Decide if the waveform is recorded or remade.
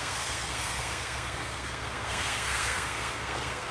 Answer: remade